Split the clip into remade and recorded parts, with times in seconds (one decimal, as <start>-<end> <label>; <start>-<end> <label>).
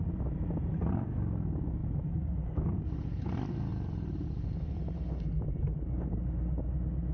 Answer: 0.0-1.8 recorded; 1.8-2.8 remade; 2.8-3.7 recorded; 3.7-5.6 remade; 5.6-7.1 recorded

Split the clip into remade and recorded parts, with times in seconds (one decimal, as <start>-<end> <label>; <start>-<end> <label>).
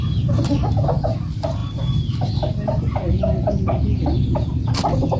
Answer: 0.0-1.6 recorded; 1.6-3.5 remade; 3.5-5.2 recorded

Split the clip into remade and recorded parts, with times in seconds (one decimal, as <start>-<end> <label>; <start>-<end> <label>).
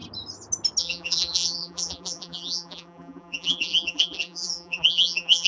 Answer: 0.0-0.8 recorded; 0.8-5.5 remade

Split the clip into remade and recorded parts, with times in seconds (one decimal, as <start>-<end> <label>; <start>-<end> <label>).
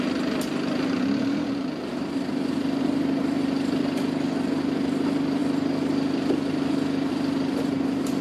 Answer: 0.0-8.2 recorded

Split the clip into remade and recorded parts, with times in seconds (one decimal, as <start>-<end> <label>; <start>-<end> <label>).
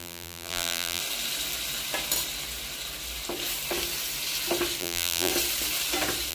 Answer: 0.0-1.0 remade; 1.0-4.8 recorded; 4.8-5.3 remade; 5.3-6.3 recorded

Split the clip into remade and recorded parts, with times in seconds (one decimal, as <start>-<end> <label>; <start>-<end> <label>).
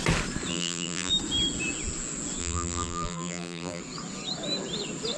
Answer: 0.0-0.5 recorded; 0.5-1.1 remade; 1.1-2.4 recorded; 2.4-3.8 remade; 3.8-5.2 recorded